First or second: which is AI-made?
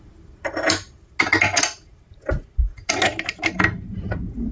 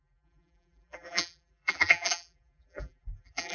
second